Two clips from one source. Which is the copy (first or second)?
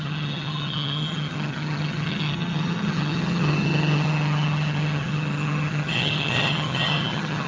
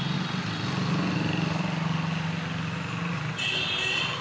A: first